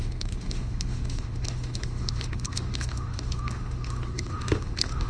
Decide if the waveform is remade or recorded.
remade